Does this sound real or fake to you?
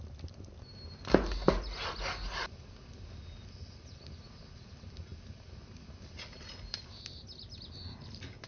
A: real